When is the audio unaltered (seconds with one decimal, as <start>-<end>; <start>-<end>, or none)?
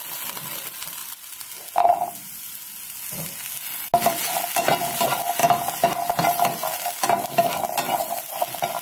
0.0-8.8